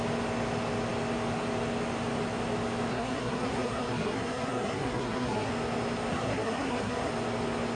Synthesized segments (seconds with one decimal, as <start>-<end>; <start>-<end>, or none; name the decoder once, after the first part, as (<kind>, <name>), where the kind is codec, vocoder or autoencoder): 2.9-5.5 (codec, SNAC); 6.1-7.1

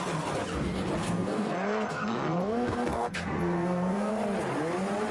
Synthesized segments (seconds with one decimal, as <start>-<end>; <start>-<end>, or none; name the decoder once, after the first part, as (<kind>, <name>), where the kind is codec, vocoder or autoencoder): 1.0-4.1 (codec, SNAC)

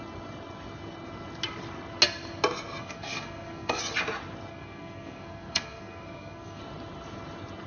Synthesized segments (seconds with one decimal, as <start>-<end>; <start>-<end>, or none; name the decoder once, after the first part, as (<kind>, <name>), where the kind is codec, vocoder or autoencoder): 2.8-3.8 (codec, SNAC); 4.5-6.6